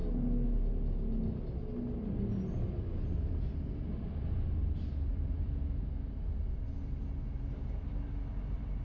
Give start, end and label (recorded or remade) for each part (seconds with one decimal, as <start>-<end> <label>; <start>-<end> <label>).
0.0-8.8 recorded